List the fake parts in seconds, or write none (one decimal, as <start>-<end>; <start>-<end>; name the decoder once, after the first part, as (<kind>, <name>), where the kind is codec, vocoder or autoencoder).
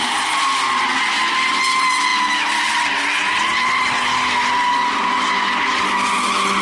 0.4-1.0 (vocoder, BigVGAN v2)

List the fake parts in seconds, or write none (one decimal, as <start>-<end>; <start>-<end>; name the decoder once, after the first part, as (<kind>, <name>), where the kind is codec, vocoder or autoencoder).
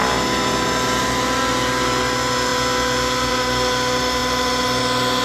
4.2-4.8 (vocoder, BigVGAN v2)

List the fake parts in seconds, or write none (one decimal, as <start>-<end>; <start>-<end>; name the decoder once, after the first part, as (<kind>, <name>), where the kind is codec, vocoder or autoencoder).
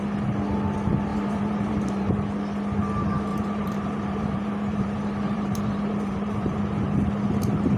1.1-2.1 (vocoder, BigVGAN v2); 3.3-6.6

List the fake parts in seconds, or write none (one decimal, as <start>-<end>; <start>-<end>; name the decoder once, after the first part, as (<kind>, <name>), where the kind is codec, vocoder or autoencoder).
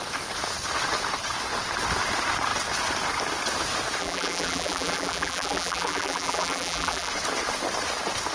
4.0-7.1 (vocoder, BigVGAN v2)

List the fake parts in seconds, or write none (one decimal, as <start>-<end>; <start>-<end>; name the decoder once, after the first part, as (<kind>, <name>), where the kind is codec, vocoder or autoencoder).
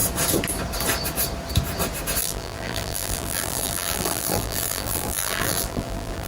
2.2-6.3 (vocoder, BigVGAN v2)